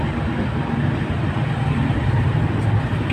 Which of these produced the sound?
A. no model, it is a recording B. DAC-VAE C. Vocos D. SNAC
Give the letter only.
A